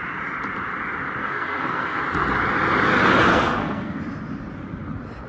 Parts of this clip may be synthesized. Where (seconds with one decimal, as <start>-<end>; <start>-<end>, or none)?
1.2-2.0; 3.3-4.0